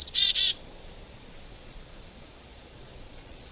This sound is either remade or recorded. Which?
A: remade